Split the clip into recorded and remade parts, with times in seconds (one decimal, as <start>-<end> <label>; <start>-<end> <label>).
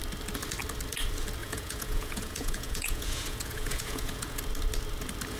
0.0-1.4 recorded; 1.4-4.4 remade; 4.4-5.4 recorded